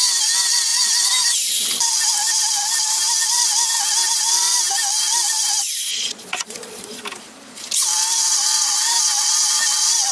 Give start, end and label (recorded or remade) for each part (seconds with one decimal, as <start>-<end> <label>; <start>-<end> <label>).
0.0-5.9 recorded; 5.9-7.0 remade; 7.0-10.1 recorded